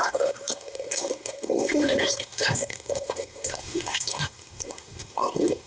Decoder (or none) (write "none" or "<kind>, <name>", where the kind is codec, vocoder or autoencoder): codec, SNAC